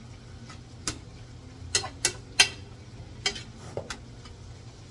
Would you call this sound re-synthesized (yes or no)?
no